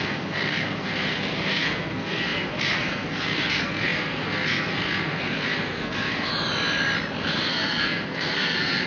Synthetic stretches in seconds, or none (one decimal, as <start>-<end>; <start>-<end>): 0.0-6.3; 7.2-8.9